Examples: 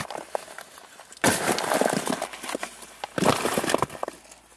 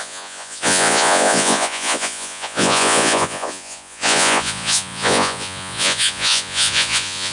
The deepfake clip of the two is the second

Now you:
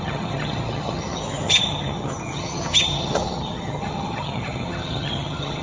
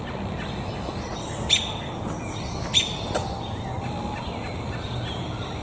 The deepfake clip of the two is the first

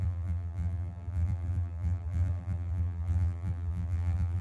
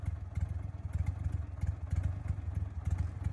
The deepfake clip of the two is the first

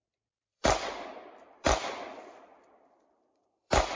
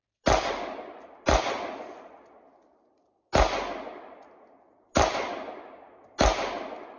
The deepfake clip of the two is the first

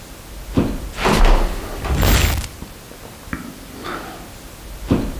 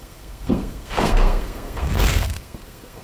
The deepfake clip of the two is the second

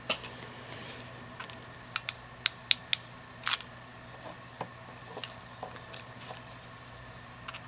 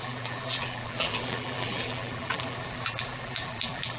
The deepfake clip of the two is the second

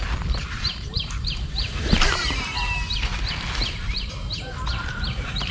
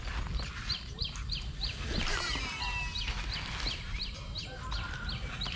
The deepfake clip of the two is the first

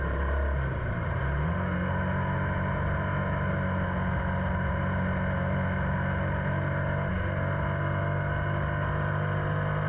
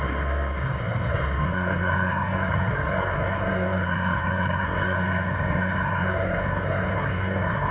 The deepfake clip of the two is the second